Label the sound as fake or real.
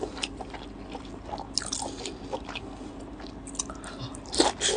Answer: real